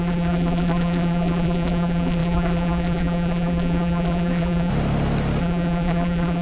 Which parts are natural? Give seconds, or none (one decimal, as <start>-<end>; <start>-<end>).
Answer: 4.7-5.4